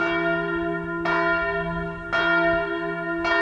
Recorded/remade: recorded